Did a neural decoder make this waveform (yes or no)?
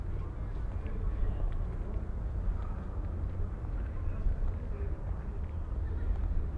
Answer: no